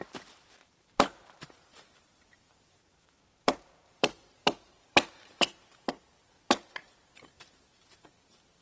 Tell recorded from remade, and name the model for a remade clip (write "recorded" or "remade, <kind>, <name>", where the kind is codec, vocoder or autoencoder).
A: remade, vocoder, BigVGAN v2